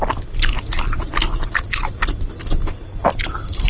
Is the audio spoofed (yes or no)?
no